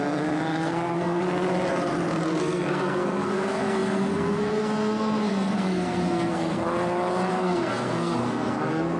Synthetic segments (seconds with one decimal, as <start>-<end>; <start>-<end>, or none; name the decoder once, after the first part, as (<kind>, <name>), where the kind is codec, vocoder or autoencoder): 0.0-1.2 (codec, SNAC); 2.4-6.6; 7.3-9.0